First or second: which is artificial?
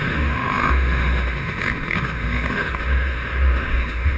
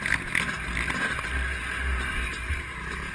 first